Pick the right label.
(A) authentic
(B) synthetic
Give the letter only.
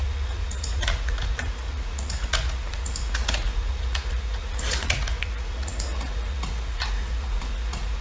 B